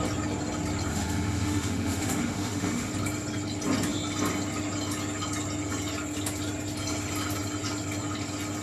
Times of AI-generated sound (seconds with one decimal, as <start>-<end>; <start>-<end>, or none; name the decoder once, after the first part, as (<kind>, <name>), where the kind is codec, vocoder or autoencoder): 0.9-2.9 (autoencoder, DAC-VAE)